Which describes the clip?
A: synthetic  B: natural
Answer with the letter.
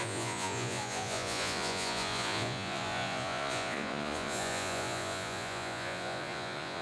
A